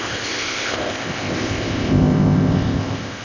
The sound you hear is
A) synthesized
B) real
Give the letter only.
A